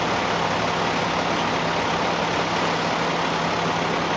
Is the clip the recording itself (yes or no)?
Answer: yes